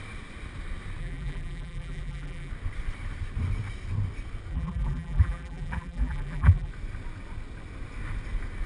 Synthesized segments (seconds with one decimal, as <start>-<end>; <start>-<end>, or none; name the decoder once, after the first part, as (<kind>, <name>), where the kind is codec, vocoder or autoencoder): 1.0-2.5 (vocoder, BigVGAN v2); 4.5-6.7